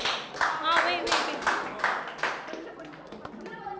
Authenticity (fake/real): real